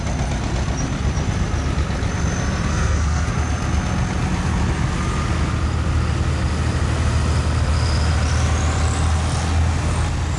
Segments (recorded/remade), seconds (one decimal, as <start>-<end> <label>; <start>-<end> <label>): 0.0-2.7 recorded; 2.7-3.3 remade; 3.3-10.4 recorded